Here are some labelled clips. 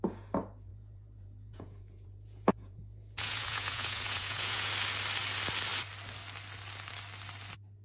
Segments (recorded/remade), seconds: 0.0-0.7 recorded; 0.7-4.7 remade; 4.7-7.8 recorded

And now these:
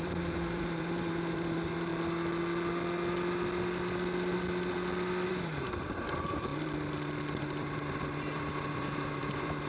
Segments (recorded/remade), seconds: 0.0-1.9 remade; 1.9-5.3 recorded; 5.3-6.5 remade; 6.5-7.4 recorded; 7.4-9.7 remade

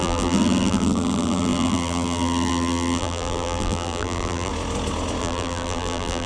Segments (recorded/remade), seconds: 0.0-4.5 remade; 4.5-5.2 recorded; 5.2-6.3 remade

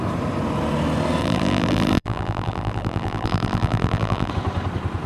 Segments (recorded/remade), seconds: 0.0-1.2 recorded; 1.2-4.3 remade; 4.3-5.1 recorded